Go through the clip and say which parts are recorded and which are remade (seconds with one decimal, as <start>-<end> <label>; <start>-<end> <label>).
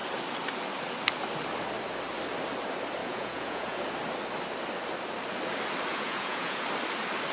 0.0-3.0 recorded; 3.0-3.8 remade; 3.8-5.9 recorded; 5.9-6.6 remade; 6.6-7.3 recorded